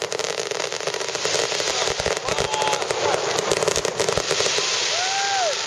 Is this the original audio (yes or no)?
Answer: yes